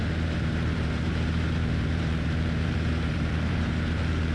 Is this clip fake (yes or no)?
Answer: yes